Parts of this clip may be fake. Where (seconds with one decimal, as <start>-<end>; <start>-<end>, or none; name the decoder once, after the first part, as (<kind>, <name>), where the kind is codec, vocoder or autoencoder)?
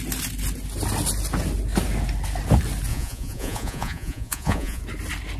2.9-4.8 (vocoder, Vocos)